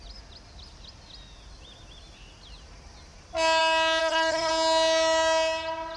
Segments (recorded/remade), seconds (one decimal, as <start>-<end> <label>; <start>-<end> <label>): 0.0-4.0 recorded; 4.0-4.5 remade; 4.5-6.0 recorded